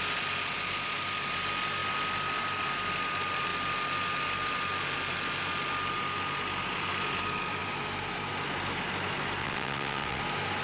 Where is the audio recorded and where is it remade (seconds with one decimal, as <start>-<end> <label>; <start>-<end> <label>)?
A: 0.0-9.4 recorded; 9.4-10.2 remade; 10.2-10.6 recorded